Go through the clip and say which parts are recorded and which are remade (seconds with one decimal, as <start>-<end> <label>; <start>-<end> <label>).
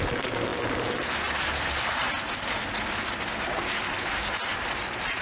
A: 0.0-0.5 recorded; 0.5-1.9 remade; 1.9-4.5 recorded; 4.5-5.2 remade